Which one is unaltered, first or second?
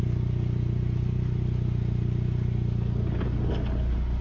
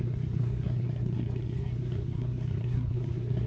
first